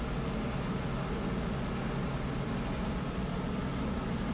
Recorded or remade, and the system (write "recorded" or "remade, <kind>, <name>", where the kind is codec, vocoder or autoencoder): recorded